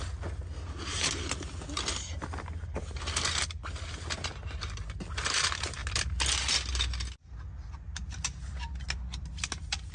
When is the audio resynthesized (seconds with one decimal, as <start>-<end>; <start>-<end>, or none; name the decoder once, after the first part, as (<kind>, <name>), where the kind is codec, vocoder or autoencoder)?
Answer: none